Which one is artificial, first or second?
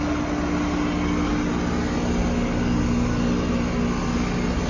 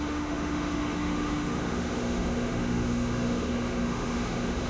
second